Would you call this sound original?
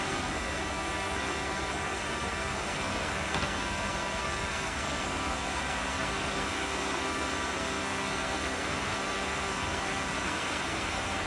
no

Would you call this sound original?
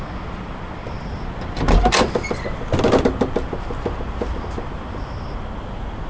yes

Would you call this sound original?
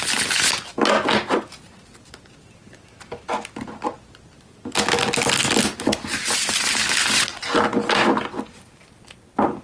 yes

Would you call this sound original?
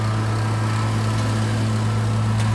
yes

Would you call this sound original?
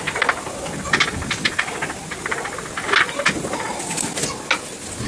yes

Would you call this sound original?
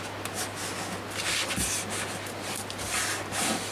yes